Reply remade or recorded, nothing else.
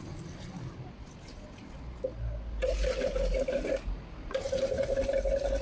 recorded